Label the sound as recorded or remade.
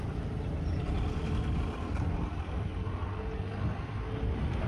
recorded